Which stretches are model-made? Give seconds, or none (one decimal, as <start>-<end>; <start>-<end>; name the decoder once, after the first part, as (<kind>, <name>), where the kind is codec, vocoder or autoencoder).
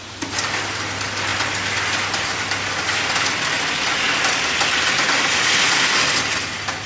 none